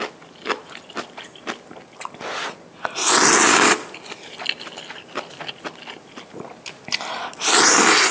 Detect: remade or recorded recorded